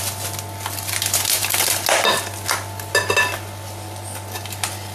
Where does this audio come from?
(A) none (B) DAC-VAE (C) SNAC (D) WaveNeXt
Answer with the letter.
A